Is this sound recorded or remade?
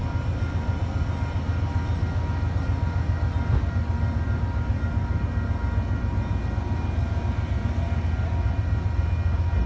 recorded